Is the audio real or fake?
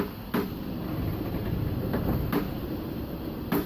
real